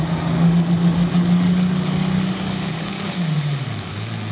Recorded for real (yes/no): no